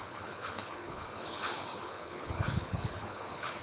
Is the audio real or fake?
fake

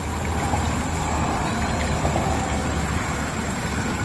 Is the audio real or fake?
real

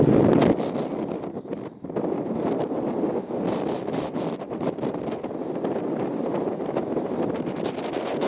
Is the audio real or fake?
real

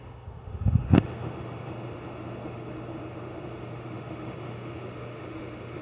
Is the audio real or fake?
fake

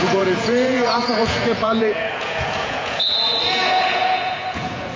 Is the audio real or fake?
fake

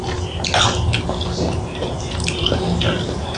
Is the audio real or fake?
real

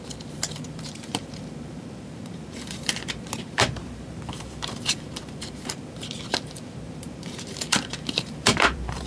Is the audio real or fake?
fake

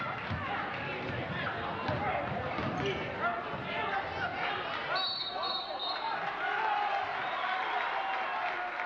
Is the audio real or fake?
real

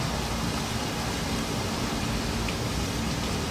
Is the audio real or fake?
real